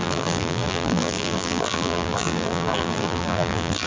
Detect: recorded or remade remade